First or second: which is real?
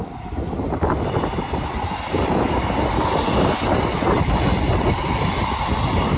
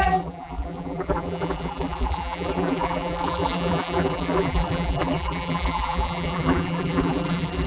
first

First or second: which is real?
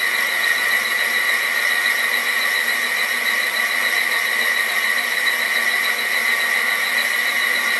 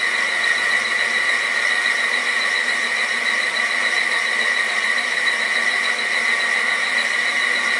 first